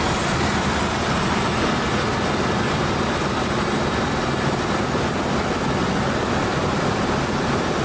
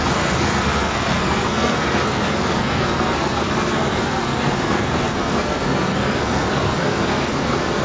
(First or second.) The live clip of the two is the first